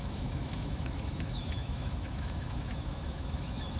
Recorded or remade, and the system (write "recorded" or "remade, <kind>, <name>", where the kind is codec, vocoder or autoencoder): remade, autoencoder, DAC-VAE